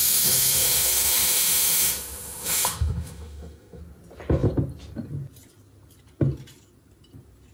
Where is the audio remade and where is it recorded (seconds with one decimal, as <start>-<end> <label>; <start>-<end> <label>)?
0.0-3.8 remade; 3.8-7.5 recorded